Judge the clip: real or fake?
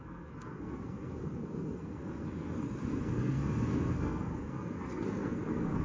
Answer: fake